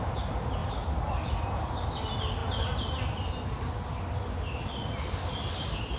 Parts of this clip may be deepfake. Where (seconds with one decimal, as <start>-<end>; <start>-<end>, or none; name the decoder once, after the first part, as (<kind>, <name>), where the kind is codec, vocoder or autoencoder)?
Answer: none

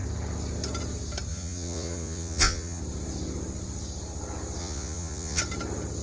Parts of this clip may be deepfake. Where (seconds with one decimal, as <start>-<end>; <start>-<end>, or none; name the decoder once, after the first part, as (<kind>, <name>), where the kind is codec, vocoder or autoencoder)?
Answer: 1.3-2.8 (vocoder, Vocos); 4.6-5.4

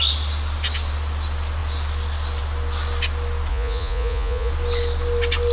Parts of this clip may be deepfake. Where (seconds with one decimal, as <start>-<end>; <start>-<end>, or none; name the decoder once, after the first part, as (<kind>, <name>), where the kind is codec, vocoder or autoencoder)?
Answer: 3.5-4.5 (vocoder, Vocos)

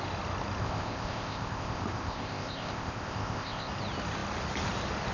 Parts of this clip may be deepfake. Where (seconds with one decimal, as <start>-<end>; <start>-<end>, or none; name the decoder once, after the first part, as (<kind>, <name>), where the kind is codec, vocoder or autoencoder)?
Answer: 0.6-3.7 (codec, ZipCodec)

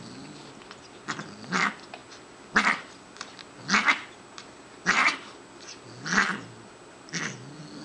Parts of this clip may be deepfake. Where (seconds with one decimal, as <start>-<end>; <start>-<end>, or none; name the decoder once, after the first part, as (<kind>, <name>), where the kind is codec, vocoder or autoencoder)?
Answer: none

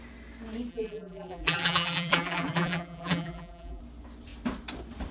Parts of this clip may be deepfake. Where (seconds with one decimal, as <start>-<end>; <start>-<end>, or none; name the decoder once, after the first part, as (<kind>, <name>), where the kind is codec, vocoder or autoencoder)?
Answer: 0.7-3.8 (vocoder, BigVGAN v2)

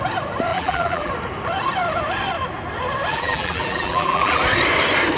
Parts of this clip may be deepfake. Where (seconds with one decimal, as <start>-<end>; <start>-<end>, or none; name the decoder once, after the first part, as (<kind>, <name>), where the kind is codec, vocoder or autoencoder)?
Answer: 0.5-1.1 (vocoder, BigVGAN v2); 3.1-4.4

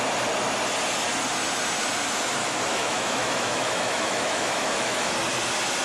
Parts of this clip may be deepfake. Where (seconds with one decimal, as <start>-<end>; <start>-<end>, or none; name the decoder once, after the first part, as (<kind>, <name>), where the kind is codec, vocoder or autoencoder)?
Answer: 2.4-5.1 (autoencoder, DAC-VAE)